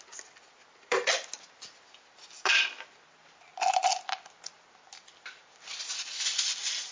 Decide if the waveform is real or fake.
real